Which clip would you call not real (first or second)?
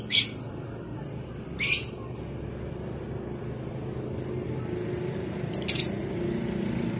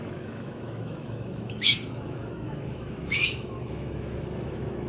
second